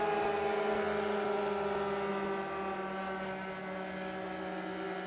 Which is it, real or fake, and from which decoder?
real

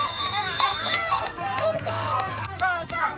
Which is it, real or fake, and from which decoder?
fake, codec, SNAC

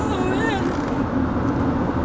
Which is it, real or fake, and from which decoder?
real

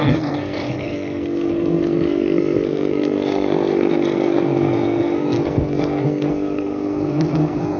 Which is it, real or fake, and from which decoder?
fake, codec, SNAC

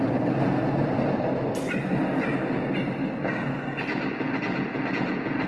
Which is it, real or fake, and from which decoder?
real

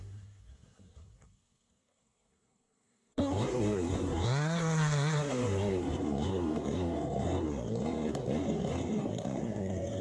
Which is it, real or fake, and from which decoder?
fake, codec, SNAC